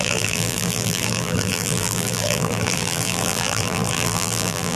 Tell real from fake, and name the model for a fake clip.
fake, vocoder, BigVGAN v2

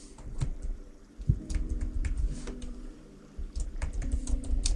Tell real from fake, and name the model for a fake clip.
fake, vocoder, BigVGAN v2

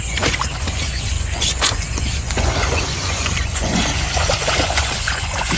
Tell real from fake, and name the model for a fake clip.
fake, vocoder, Vocos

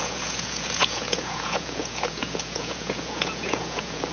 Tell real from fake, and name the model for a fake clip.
fake, vocoder, Vocos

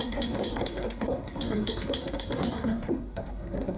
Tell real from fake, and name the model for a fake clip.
fake, codec, SNAC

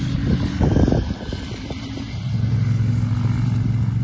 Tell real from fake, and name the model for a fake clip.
real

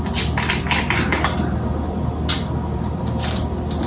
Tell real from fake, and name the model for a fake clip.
real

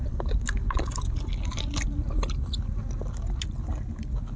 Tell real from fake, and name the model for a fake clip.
real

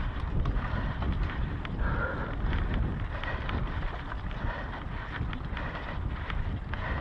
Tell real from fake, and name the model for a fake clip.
fake, vocoder, BigVGAN v2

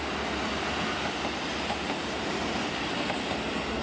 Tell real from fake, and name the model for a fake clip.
real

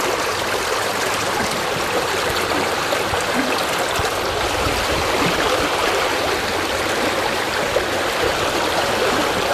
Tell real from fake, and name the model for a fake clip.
fake, vocoder, BigVGAN v2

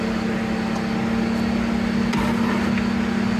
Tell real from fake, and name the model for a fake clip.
real